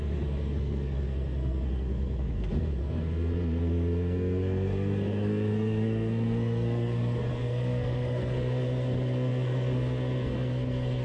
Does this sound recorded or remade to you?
remade